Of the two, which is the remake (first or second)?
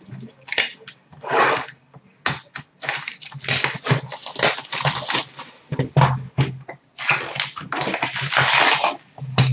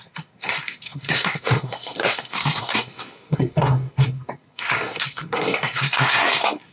second